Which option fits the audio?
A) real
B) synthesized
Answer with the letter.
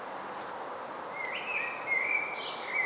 A